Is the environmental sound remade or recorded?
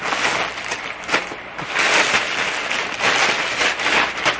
recorded